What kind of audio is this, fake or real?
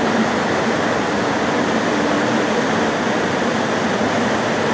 fake